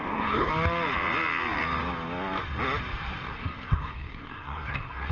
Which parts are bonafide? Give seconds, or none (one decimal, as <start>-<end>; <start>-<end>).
0.5-3.3